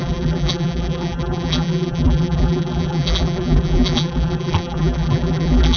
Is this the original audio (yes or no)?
no